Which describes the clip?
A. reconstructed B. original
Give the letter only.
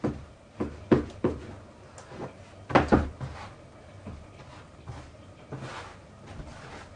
B